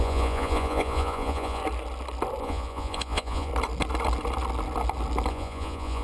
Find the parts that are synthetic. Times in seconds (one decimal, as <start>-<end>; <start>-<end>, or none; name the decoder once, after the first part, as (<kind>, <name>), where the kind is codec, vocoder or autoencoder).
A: 0.0-1.6 (vocoder, Vocos); 2.4-3.5; 5.3-6.0